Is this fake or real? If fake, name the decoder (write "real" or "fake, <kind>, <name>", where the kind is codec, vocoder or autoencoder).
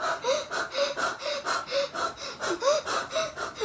real